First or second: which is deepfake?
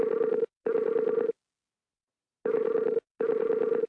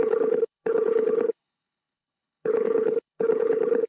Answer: second